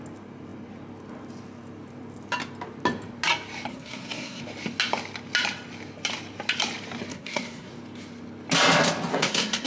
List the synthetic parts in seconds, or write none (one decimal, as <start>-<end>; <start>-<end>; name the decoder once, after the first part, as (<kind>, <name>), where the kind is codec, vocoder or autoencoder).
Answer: 3.7-4.4 (codec, SNAC); 7.1-7.7; 9.1-9.7

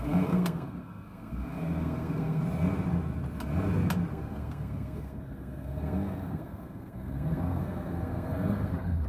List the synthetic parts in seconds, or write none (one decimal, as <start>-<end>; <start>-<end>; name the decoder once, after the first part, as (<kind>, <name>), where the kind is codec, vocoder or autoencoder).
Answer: 0.0-2.4 (codec, SNAC); 4.1-9.1

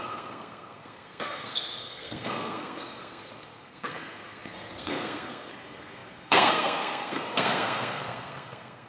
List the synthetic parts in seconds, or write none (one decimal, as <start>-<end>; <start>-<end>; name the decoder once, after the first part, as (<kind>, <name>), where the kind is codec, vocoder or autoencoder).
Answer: 0.0-8.9 (codec, SNAC)

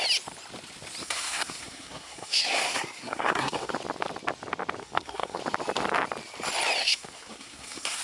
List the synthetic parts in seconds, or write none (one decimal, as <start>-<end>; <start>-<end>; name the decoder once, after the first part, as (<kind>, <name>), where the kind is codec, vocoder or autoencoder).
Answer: 1.0-3.7 (codec, SNAC); 4.8-5.4; 6.8-8.0

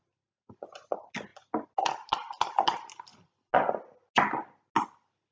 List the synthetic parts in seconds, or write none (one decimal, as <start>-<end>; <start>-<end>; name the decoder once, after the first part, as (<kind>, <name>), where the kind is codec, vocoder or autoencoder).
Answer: none

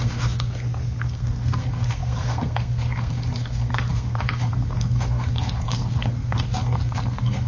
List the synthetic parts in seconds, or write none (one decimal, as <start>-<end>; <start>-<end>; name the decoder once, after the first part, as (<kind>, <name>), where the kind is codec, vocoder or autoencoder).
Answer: 0.0-7.5 (codec, SNAC)